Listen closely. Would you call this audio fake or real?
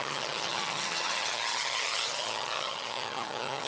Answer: fake